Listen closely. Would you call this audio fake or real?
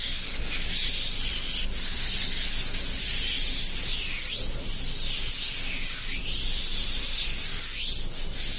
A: real